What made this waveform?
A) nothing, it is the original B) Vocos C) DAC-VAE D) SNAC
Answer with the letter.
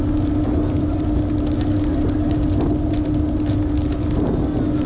A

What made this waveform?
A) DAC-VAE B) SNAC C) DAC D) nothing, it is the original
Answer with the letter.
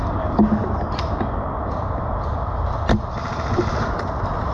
D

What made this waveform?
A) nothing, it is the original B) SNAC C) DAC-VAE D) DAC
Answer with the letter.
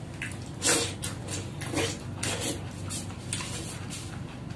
A